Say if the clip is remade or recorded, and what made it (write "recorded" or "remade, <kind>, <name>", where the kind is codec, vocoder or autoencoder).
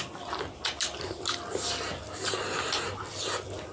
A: recorded